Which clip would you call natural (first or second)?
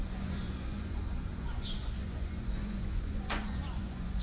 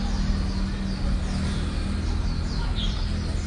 second